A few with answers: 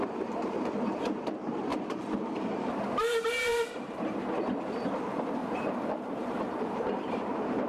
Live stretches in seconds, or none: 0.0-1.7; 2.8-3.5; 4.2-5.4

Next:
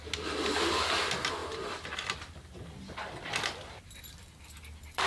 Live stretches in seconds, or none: 0.0-5.1

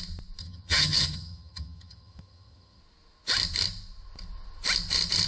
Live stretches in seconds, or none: 0.0-0.4; 2.8-5.3

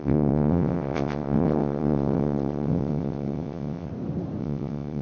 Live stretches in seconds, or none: 3.9-4.4

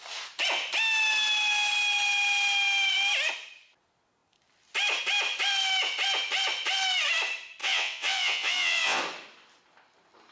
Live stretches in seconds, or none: 0.0-7.6; 9.0-10.3

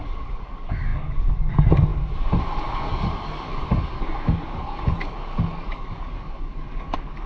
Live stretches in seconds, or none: 1.9-2.6

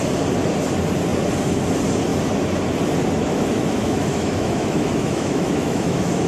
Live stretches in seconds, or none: 0.0-3.2

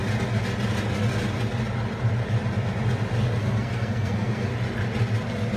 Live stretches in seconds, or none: 0.0-3.4; 4.5-5.6